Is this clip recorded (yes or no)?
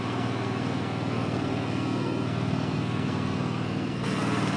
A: no